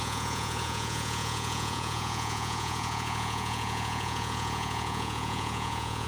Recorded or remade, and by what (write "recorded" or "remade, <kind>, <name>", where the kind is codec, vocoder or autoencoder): remade, vocoder, Vocos